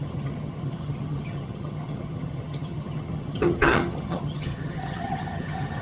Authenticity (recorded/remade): remade